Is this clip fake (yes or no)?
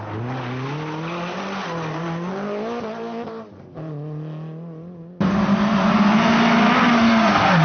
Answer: no